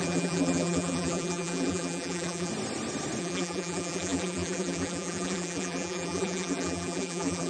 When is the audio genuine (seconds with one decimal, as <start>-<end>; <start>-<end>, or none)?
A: 2.5-3.2